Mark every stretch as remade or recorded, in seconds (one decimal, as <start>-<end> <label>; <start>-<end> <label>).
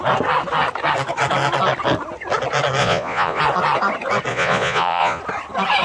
0.0-2.8 recorded; 2.8-3.4 remade; 3.4-4.3 recorded; 4.3-5.2 remade; 5.2-5.8 recorded